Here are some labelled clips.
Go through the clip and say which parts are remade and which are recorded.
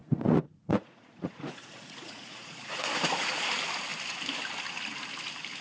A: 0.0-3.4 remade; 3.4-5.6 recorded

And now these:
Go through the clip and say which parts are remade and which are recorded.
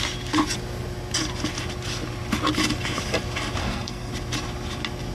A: 0.0-3.6 recorded; 3.6-4.1 remade; 4.1-5.1 recorded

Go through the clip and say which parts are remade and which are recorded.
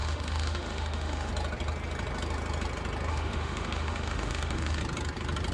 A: 0.0-1.3 remade; 1.3-3.1 recorded; 3.1-4.8 remade; 4.8-5.5 recorded